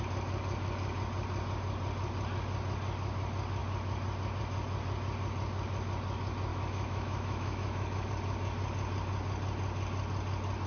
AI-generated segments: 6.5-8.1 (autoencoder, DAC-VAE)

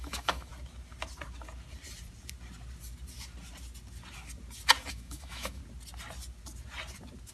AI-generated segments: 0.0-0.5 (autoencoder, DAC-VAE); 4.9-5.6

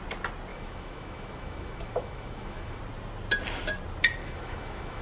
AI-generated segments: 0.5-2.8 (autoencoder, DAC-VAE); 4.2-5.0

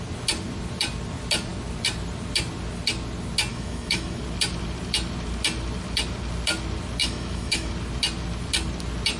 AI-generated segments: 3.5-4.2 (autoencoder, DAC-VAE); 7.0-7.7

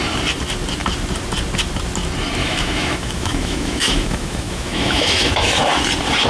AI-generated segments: 2.4-5.6 (autoencoder, DAC-VAE)

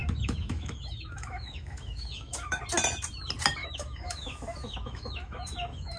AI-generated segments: 0.0-2.6 (autoencoder, DAC-VAE); 3.6-6.0